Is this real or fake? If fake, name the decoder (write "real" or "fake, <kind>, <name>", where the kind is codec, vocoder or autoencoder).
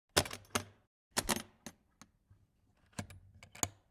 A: real